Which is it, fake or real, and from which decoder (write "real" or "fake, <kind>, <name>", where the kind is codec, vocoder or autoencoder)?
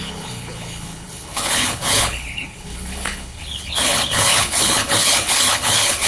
fake, codec, HILCodec